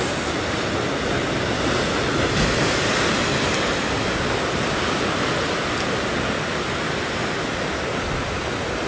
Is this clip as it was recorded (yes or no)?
yes